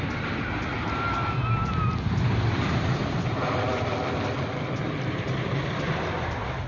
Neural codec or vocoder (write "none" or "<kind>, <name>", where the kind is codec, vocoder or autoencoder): none